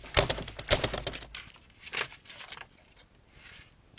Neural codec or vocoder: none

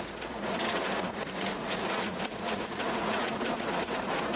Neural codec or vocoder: vocoder, Vocos